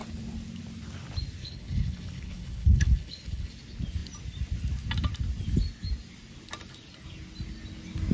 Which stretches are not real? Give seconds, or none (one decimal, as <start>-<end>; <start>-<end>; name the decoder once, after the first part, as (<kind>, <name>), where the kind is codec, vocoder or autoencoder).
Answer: 1.4-3.5 (codec, HILCodec)

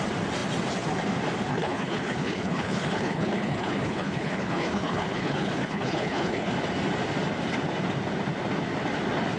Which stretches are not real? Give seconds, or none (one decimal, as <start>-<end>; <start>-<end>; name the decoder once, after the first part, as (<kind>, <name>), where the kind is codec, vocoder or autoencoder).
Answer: 1.5-6.5 (codec, HILCodec)

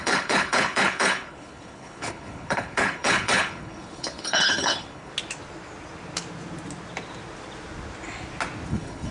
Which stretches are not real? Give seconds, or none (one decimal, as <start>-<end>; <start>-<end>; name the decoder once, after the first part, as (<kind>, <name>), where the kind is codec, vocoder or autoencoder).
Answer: 0.0-5.1 (codec, HILCodec); 8.7-9.1

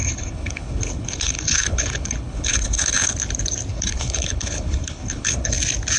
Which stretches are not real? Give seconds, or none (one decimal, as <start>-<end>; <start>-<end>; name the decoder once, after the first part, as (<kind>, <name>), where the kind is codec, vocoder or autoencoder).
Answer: 0.0-3.1 (codec, HILCodec); 3.7-5.5

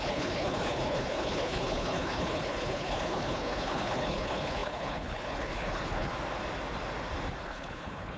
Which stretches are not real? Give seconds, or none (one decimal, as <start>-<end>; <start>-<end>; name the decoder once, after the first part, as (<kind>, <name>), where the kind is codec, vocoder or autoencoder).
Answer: 0.0-6.1 (codec, HILCodec); 7.4-8.2

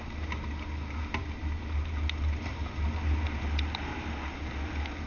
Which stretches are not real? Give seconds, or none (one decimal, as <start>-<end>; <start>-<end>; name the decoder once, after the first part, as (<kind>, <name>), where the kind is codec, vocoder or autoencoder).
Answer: none

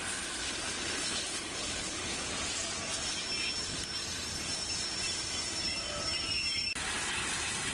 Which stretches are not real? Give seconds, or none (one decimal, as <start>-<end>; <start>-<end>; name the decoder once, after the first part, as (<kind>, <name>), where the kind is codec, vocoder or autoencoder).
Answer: 0.4-2.3 (codec, HILCodec)

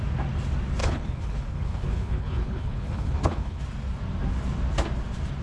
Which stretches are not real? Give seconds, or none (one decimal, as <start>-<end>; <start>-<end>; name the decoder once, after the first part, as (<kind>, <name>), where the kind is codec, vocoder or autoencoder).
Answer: 0.8-3.6 (codec, HILCodec)